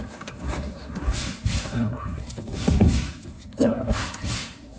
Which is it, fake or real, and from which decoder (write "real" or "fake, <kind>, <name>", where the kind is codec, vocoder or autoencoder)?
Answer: fake, codec, SNAC